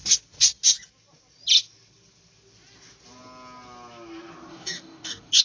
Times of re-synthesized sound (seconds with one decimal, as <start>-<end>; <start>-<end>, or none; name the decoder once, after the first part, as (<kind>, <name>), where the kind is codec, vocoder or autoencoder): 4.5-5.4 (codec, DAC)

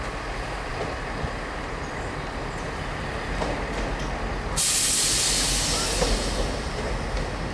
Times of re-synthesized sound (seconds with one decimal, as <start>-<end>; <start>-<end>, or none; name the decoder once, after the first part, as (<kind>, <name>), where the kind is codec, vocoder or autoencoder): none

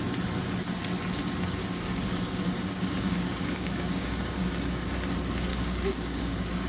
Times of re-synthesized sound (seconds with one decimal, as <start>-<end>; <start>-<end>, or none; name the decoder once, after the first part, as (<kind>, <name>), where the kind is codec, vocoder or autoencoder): 1.6-4.4 (codec, DAC); 5.5-6.7

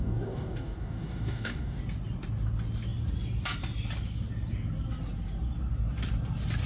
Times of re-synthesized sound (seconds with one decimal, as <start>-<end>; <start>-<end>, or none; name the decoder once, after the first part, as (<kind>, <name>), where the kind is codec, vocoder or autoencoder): 0.0-1.8 (codec, DAC)

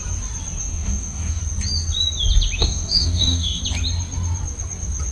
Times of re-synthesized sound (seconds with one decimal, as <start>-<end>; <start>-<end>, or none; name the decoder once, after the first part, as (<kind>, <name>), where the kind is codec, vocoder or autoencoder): 0.6-1.4 (codec, DAC); 2.6-3.6

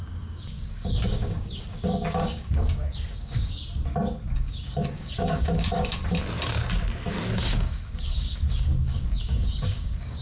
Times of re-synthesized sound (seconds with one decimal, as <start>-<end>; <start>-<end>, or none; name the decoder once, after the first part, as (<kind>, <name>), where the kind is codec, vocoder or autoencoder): 0.0-3.6 (codec, DAC); 4.3-6.0; 7.3-10.2